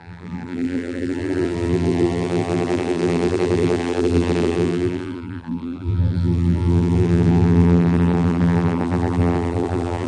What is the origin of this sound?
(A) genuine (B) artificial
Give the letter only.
B